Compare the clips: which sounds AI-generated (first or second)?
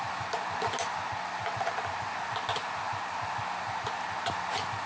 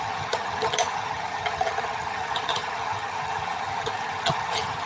second